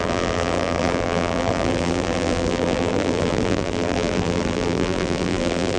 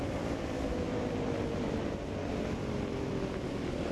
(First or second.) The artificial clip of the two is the first